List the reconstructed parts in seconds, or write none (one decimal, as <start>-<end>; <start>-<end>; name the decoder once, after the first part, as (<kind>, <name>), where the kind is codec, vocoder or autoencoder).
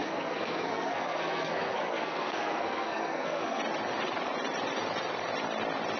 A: 0.0-3.6 (codec, SNAC)